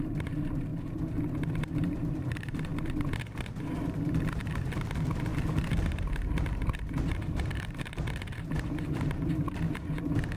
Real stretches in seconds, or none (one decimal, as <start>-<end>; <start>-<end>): 0.7-1.7; 2.7-3.7